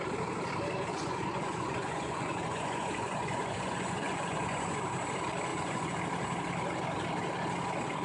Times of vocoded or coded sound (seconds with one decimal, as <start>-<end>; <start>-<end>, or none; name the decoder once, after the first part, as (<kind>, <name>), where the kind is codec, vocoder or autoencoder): 0.9-4.8 (vocoder, Vocos); 5.5-6.0